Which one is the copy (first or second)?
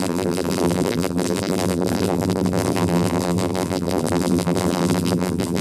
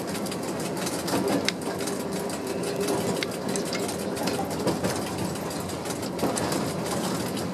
first